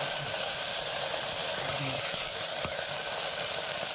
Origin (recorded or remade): recorded